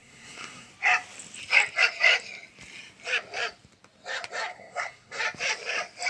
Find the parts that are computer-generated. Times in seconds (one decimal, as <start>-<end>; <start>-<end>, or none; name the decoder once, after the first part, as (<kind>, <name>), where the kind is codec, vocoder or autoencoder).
0.0-0.7 (codec, SNAC); 4.5-5.2